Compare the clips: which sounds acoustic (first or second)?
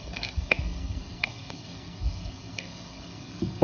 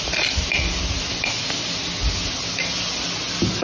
second